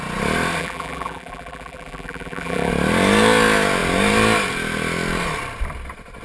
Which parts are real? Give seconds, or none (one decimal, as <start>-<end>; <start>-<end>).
0.0-0.6; 2.7-6.2